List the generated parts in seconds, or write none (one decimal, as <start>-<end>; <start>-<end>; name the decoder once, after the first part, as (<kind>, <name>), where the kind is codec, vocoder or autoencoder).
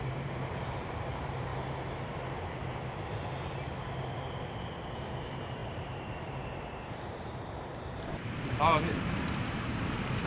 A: 0.0-1.5 (vocoder, BigVGAN v2); 5.0-10.3